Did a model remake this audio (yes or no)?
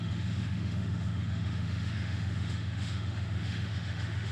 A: yes